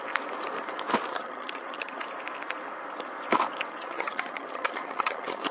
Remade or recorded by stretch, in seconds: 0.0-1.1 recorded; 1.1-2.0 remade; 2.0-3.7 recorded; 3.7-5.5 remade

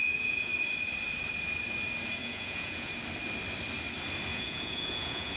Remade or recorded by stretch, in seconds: 0.0-0.5 remade; 0.5-2.2 recorded; 2.2-2.9 remade; 2.9-4.3 recorded; 4.3-5.4 remade

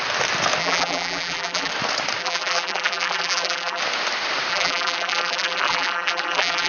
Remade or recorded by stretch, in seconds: 0.0-0.6 recorded; 0.6-1.7 remade; 1.7-2.2 recorded; 2.2-3.8 remade; 3.8-4.5 recorded; 4.5-6.7 remade

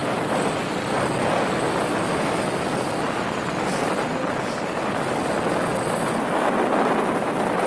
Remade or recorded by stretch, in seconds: 0.0-7.7 recorded

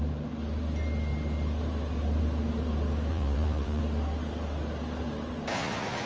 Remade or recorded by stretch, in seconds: 0.0-3.1 recorded; 3.1-3.8 remade; 3.8-5.5 recorded; 5.5-6.1 remade

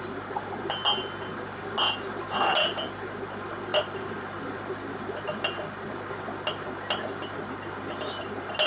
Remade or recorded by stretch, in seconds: 0.0-3.7 recorded; 3.7-4.4 remade; 4.4-8.7 recorded

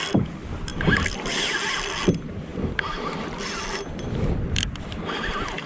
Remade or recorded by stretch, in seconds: 0.0-5.7 remade

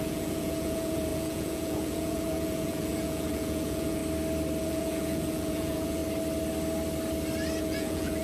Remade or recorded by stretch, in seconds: 0.0-4.0 remade; 4.0-4.6 recorded; 4.6-6.0 remade; 6.0-7.6 recorded; 7.6-8.2 remade